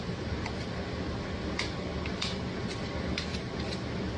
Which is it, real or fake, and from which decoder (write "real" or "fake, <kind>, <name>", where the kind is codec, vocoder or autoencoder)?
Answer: real